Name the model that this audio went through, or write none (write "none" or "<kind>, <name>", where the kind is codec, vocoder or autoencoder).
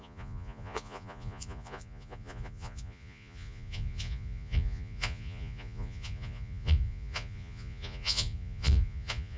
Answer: vocoder, Vocos